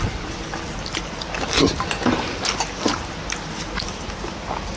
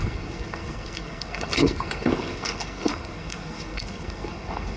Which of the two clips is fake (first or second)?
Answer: second